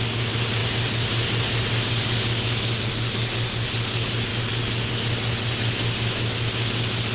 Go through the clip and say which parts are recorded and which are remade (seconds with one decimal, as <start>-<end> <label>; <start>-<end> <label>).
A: 0.0-7.1 recorded